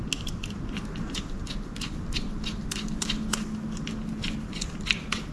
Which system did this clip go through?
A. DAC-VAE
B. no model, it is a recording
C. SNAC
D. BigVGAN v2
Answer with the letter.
B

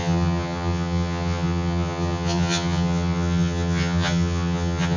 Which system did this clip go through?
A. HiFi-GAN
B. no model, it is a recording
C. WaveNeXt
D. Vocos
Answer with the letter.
A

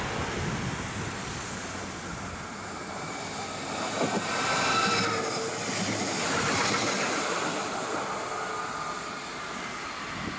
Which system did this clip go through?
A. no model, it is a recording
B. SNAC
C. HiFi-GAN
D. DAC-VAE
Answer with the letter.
A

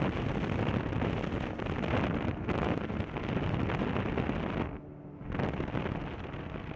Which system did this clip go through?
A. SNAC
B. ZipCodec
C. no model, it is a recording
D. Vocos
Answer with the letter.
C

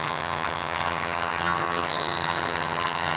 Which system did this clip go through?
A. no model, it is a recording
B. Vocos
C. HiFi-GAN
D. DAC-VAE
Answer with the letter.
C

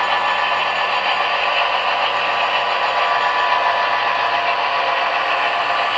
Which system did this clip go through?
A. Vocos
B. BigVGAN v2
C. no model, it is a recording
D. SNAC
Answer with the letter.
C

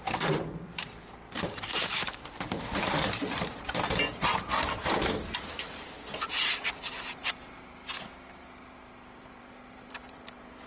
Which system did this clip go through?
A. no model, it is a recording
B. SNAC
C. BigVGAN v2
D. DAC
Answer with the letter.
C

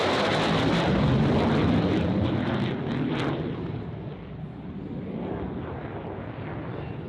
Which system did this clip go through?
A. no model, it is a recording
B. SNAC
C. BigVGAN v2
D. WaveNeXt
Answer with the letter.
A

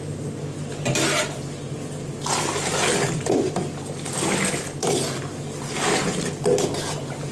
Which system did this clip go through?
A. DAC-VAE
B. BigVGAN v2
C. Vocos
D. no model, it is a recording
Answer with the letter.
D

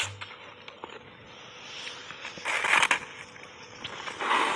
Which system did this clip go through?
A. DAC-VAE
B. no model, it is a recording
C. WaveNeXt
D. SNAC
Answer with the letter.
B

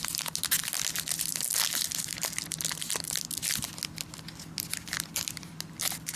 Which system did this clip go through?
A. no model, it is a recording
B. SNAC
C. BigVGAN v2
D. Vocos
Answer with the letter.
A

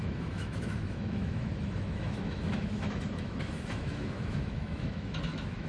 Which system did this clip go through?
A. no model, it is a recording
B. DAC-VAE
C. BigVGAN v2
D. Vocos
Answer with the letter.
B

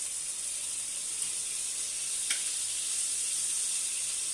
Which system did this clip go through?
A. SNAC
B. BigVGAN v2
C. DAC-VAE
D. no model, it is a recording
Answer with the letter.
D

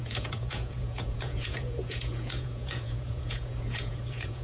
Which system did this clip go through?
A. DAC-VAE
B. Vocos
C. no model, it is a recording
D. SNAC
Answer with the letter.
B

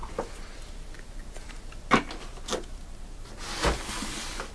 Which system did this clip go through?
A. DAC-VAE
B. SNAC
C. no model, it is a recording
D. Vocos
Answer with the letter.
C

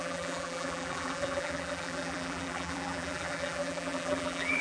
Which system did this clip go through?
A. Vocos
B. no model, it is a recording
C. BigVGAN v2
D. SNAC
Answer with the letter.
C